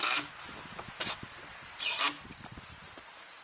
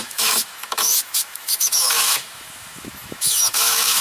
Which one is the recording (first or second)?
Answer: first